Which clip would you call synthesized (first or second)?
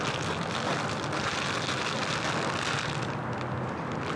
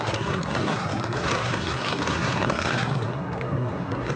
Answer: second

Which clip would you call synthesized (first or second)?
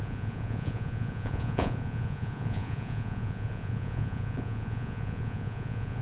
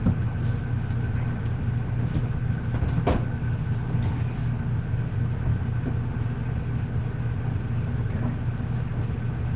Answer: first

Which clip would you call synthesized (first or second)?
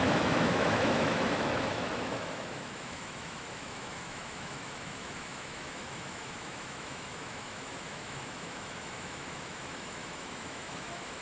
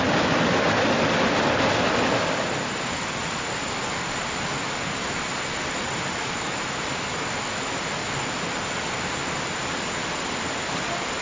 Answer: first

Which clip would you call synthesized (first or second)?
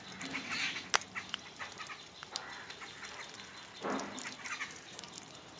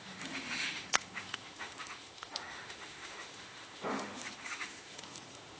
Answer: second